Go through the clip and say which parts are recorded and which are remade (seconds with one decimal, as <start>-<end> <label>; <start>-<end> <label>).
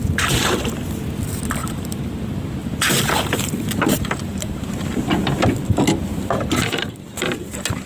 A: 0.0-1.6 recorded; 1.6-2.2 remade; 2.2-2.6 recorded; 2.6-3.2 remade; 3.2-4.3 recorded; 4.3-4.9 remade; 4.9-7.9 recorded